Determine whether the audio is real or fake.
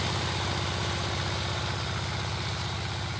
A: real